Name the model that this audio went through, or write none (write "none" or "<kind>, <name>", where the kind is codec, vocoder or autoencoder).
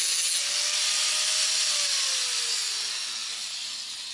none